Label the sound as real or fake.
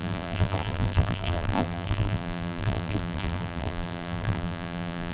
fake